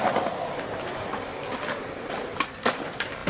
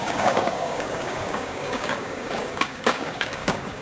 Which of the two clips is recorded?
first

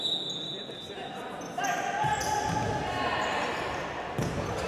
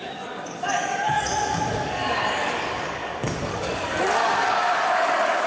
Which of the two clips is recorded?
first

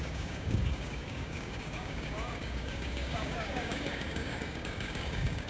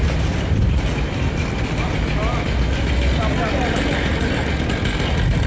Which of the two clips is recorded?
second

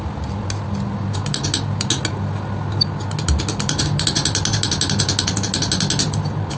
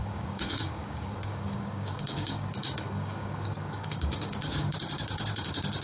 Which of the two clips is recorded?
first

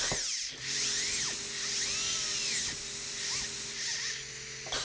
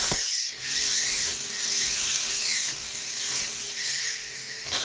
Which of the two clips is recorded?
first